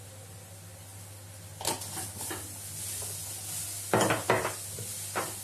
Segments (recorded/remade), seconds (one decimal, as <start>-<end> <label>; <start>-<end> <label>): 0.0-5.4 recorded